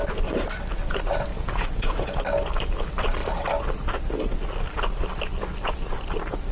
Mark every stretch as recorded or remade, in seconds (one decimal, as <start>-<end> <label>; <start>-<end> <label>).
0.0-1.3 recorded; 1.3-2.2 remade; 2.2-6.5 recorded